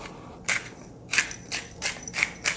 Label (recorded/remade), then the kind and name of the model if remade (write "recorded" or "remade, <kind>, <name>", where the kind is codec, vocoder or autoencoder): recorded